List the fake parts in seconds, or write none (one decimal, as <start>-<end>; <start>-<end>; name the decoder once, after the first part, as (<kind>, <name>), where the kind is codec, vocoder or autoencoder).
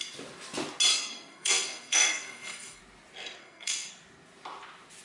0.9-2.8 (codec, SNAC); 3.4-3.9